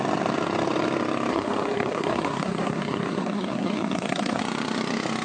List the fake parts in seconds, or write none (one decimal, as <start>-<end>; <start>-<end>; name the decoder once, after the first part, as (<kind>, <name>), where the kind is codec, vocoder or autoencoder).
1.3-4.4 (codec, SNAC)